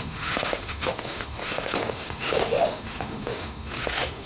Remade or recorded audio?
remade